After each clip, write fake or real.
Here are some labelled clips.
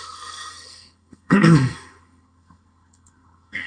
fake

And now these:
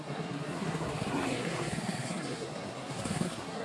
fake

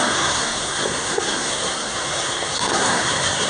fake